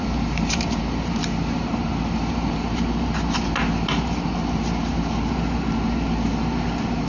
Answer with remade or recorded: remade